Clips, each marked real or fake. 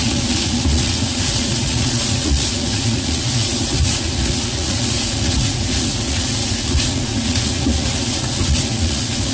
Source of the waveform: fake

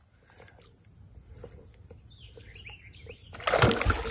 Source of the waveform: real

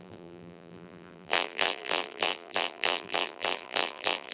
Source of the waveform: fake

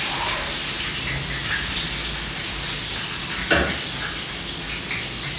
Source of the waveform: real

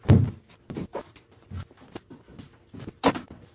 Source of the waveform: real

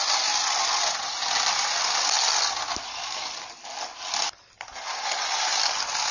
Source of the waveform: real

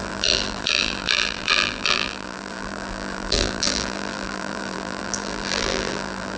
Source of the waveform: fake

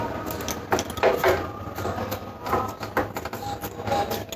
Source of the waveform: real